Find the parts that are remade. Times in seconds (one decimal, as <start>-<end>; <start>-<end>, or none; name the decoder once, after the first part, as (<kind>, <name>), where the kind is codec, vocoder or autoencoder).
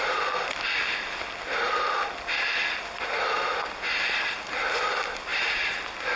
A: none